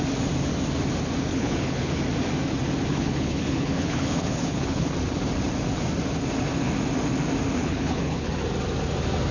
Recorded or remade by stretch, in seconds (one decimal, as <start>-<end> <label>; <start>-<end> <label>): 0.0-1.3 recorded; 1.3-2.0 remade; 2.0-2.9 recorded; 2.9-4.9 remade; 4.9-7.6 recorded; 7.6-8.3 remade; 8.3-9.3 recorded

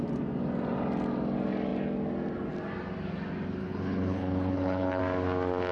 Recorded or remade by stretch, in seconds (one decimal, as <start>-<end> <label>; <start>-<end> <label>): 0.0-3.6 recorded; 3.6-5.0 remade; 5.0-5.7 recorded

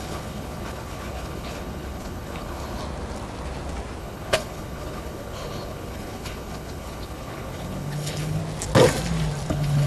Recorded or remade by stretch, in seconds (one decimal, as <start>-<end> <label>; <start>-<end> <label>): 0.0-2.8 remade; 2.8-4.0 recorded; 4.0-8.4 remade; 8.4-9.5 recorded; 9.5-9.9 remade

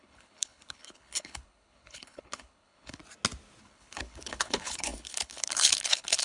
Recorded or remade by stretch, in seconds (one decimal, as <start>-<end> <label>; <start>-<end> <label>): 0.0-3.0 remade; 3.0-3.6 recorded; 3.6-6.2 remade

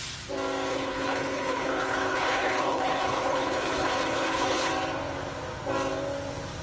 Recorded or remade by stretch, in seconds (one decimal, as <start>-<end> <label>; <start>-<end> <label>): 0.0-0.7 recorded; 0.7-4.7 remade; 4.7-6.6 recorded

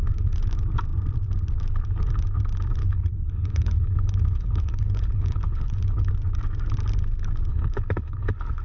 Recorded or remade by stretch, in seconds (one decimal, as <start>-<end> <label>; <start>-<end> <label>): 0.0-2.8 recorded; 2.8-6.1 remade; 6.1-7.5 recorded; 7.5-8.6 remade